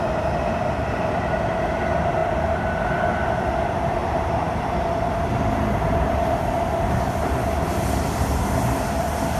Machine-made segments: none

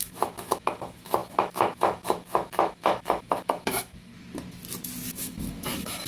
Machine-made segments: 0.0-4.1 (autoencoder, DAC-VAE); 5.2-6.1

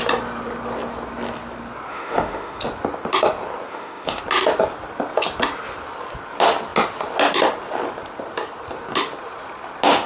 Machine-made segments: 1.9-2.6 (autoencoder, DAC-VAE); 3.7-4.2

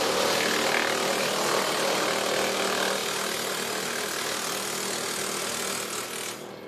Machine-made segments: none

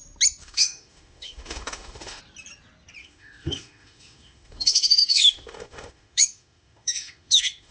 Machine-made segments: 0.4-2.2 (autoencoder, DAC-VAE); 3.0-7.7

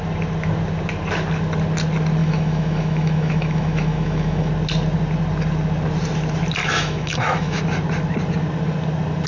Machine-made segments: 2.2-4.5 (autoencoder, DAC-VAE); 6.6-7.6

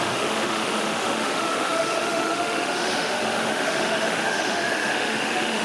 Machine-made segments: 0.0-5.6 (autoencoder, DAC-VAE)